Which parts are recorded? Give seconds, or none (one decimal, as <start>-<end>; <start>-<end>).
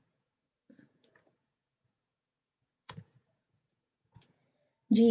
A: 4.4-5.1